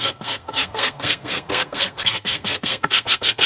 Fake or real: fake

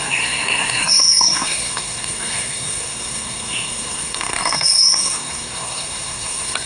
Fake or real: fake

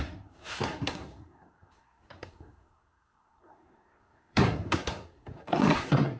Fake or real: fake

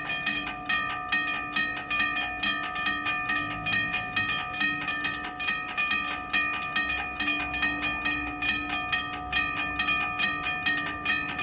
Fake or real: real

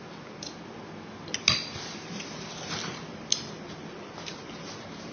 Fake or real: real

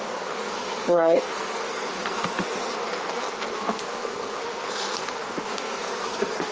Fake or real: fake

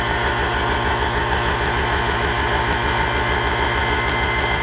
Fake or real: real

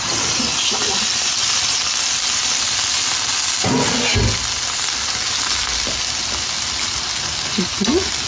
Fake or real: real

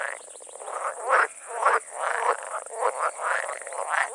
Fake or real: real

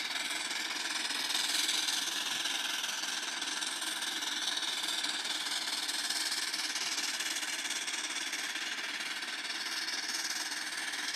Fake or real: real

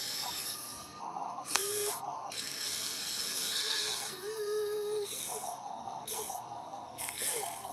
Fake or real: fake